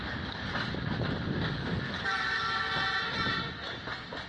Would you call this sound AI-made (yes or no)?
no